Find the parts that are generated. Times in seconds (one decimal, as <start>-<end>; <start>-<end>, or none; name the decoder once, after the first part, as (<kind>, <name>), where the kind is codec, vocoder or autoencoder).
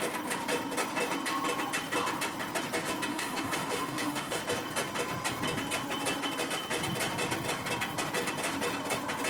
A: 3.1-4.4 (autoencoder, DAC-VAE)